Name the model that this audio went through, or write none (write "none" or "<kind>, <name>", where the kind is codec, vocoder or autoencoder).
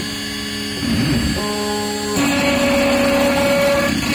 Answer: none